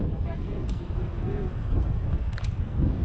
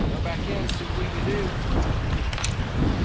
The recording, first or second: second